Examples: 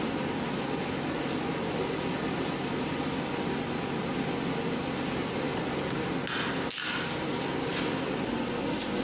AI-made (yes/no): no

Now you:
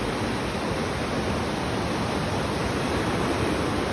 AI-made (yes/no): no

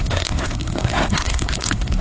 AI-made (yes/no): yes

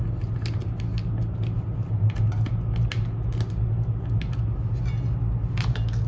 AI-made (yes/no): no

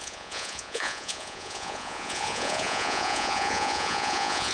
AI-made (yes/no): yes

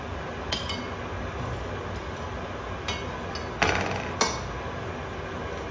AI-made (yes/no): no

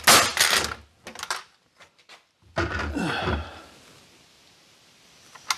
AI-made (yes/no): no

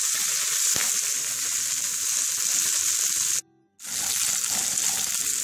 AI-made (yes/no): no